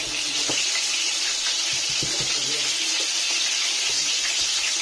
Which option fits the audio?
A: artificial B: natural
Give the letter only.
B